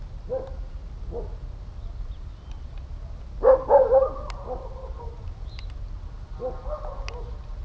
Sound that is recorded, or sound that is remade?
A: recorded